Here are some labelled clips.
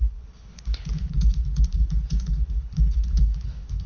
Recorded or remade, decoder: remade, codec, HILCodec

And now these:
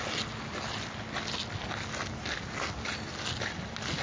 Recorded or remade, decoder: recorded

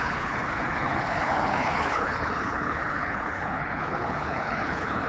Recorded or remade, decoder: remade, codec, HILCodec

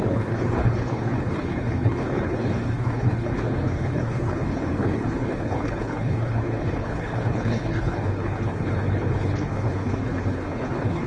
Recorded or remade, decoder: remade, codec, HILCodec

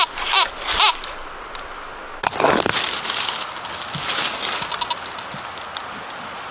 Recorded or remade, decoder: recorded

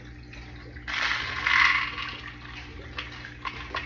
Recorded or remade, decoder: recorded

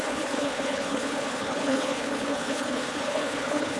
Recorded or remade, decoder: remade, codec, HILCodec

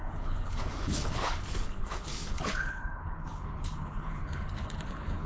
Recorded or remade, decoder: remade, codec, HILCodec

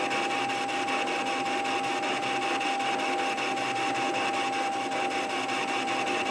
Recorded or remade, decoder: recorded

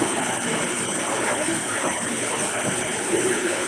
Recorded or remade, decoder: remade, codec, HILCodec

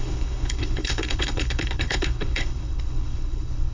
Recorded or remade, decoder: remade, codec, HILCodec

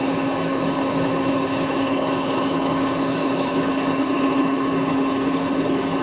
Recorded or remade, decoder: remade, codec, HILCodec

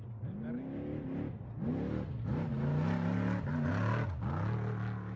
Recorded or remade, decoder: recorded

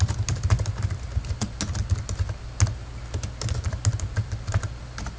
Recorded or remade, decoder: recorded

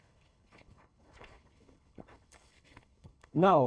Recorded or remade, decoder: remade, codec, HILCodec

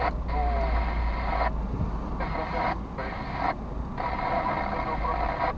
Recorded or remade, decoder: recorded